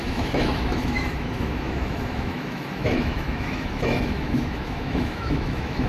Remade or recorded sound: remade